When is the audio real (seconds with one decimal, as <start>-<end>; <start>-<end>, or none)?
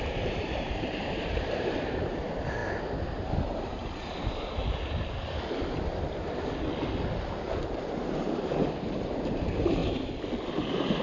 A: 2.6-3.5; 4.6-7.7; 9.8-10.5